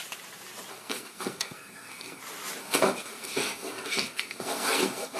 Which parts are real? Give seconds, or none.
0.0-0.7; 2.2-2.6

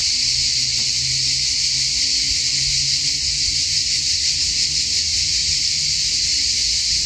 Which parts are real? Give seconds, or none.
0.0-7.1

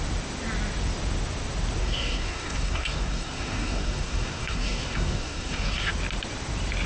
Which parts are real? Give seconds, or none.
0.0-1.8; 5.9-6.9

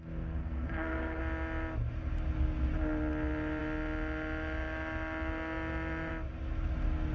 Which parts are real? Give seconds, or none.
0.0-0.4; 1.2-7.1

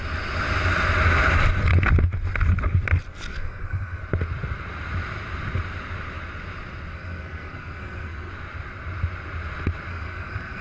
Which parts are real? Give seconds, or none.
0.0-3.3; 4.0-6.9; 8.3-9.9